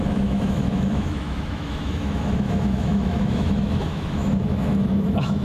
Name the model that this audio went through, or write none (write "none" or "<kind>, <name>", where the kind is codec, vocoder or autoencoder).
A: autoencoder, DAC-VAE